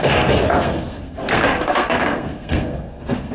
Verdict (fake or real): fake